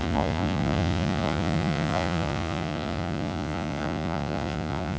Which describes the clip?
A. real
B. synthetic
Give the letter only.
B